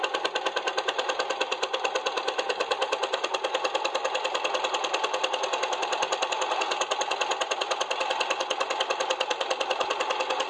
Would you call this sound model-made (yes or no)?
yes